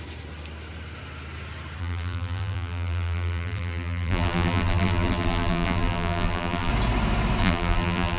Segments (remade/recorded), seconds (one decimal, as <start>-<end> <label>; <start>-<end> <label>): 0.0-1.8 recorded; 1.8-6.7 remade; 6.7-7.4 recorded; 7.4-8.2 remade